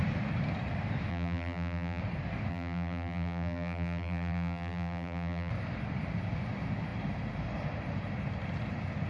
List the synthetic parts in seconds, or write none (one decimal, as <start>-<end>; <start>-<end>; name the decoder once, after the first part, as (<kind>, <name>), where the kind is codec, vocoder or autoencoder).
1.1-2.0 (vocoder, BigVGAN v2); 2.5-5.5